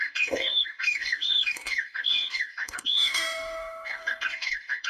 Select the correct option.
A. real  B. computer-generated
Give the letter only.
B